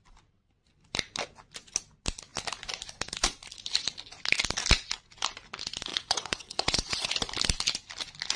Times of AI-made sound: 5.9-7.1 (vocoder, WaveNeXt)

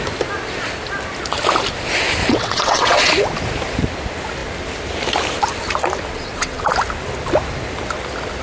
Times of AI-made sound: 2.2-3.1 (vocoder, WaveNeXt); 6.1-6.7

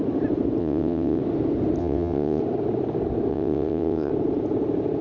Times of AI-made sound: 0.6-1.2 (vocoder, WaveNeXt); 1.8-2.4; 3.3-4.1

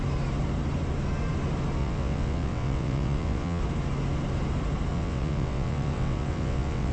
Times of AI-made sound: 1.8-3.6 (vocoder, WaveNeXt); 4.9-6.9

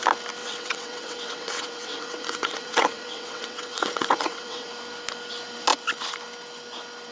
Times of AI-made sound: 0.4-4.7 (vocoder, WaveNeXt)

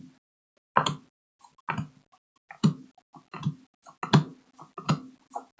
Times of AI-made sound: none

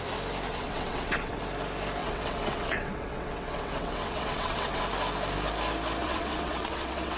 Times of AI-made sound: 0.5-1.4 (vocoder, WaveNeXt); 2.0-4.8; 6.0-7.2

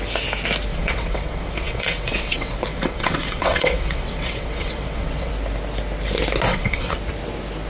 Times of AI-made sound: 0.7-5.3 (vocoder, WaveNeXt); 6.5-7.0